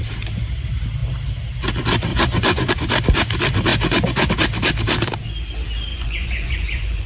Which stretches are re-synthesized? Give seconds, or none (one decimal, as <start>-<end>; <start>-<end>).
2.1-2.7; 3.7-4.3; 5.9-7.1